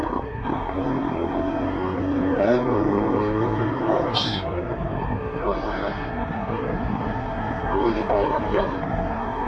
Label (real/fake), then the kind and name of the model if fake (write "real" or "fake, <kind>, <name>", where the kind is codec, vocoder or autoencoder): fake, codec, SNAC